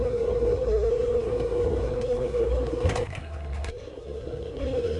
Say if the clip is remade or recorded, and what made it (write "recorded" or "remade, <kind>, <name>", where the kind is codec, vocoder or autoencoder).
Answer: remade, codec, SNAC